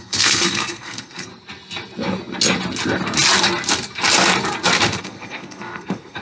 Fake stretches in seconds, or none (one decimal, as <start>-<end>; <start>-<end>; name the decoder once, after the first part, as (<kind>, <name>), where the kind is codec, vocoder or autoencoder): 0.0-1.3 (codec, SNAC); 5.0-6.2